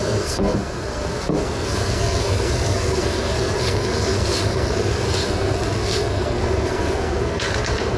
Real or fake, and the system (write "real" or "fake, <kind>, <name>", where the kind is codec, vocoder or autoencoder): fake, codec, SNAC